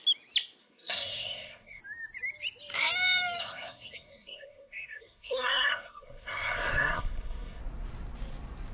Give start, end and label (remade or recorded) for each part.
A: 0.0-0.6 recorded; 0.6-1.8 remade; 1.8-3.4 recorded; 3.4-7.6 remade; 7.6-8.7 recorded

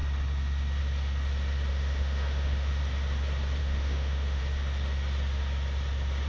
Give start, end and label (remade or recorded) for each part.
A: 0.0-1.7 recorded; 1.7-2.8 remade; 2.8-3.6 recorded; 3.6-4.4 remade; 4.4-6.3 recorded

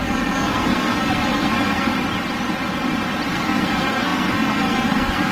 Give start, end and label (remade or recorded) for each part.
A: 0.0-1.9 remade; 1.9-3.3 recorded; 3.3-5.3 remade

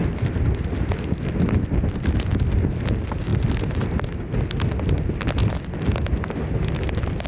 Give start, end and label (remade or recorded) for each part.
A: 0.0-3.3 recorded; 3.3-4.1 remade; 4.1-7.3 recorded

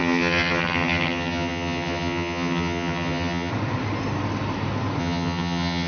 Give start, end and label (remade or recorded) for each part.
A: 0.0-3.5 remade; 3.5-5.0 recorded; 5.0-5.9 remade

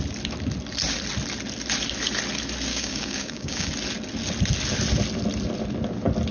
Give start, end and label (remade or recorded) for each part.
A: 0.0-2.7 recorded; 2.7-3.7 remade; 3.7-6.3 recorded